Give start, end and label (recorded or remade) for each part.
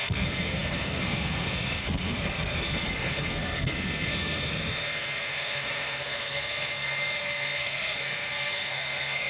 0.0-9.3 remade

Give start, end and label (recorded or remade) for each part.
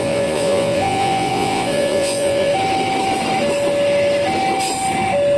0.0-2.5 remade; 2.5-5.4 recorded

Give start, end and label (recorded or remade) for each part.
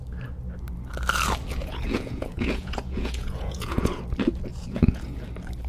0.0-1.6 recorded; 1.6-4.0 remade; 4.0-4.5 recorded; 4.5-5.2 remade; 5.2-5.7 recorded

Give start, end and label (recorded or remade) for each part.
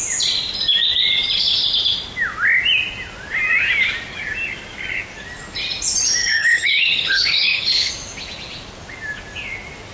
0.0-6.2 recorded; 6.2-7.9 remade; 7.9-9.9 recorded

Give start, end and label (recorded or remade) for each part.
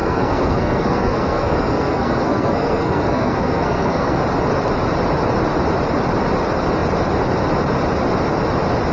0.0-4.2 remade; 4.2-8.9 recorded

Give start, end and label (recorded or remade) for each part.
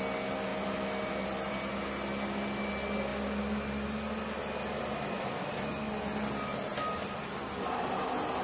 0.0-8.4 recorded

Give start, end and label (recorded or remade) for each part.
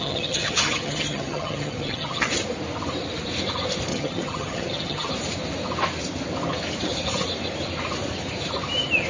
0.0-2.3 remade; 2.3-3.9 recorded; 3.9-5.1 remade; 5.1-9.1 recorded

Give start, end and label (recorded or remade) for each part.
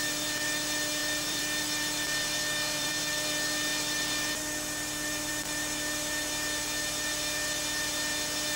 0.0-1.0 recorded; 1.0-2.9 remade; 2.9-3.7 recorded; 3.7-5.3 remade; 5.3-8.6 recorded